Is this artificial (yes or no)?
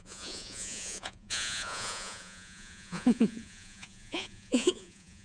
yes